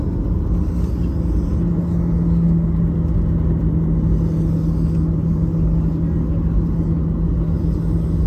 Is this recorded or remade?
recorded